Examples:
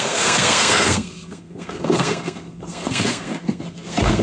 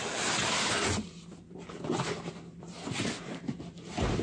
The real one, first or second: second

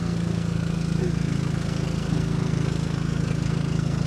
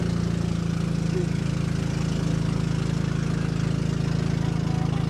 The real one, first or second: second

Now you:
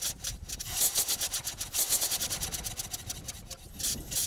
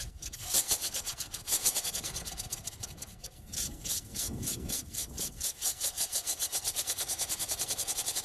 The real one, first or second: first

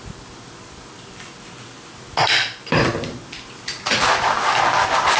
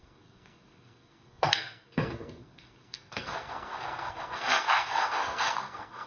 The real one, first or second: first